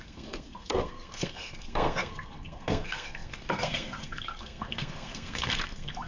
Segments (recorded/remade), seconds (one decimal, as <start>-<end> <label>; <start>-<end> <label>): 0.0-6.1 remade